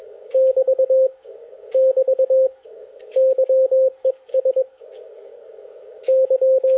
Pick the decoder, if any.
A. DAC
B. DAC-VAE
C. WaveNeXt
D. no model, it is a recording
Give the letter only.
A